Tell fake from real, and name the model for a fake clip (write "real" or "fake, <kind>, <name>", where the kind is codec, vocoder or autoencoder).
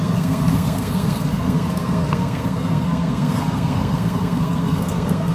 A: fake, codec, SNAC